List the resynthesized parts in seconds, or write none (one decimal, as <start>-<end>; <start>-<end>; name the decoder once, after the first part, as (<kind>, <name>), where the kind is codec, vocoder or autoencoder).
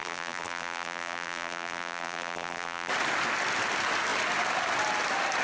0.0-2.9 (vocoder, BigVGAN v2)